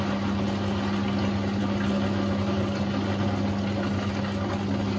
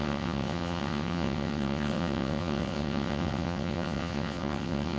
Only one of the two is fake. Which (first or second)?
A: second